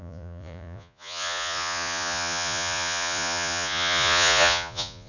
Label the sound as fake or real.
fake